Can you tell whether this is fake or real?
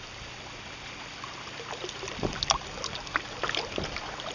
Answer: real